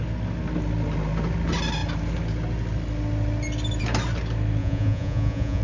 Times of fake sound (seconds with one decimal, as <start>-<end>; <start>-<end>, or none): 4.6-5.6